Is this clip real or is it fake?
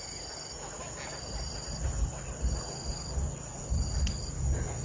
real